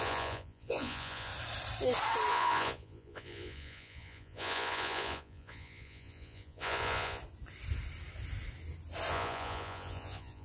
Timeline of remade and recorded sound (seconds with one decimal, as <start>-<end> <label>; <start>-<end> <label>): 0.0-1.3 remade; 1.3-2.3 recorded; 2.3-7.2 remade; 7.2-9.1 recorded; 9.1-10.4 remade